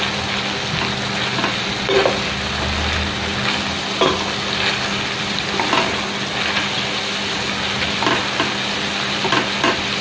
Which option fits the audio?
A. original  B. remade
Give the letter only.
A